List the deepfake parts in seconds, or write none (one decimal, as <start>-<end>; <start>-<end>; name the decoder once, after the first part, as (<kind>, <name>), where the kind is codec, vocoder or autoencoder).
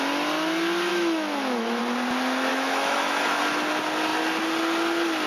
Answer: 0.9-1.8 (autoencoder, DAC-VAE); 2.5-3.4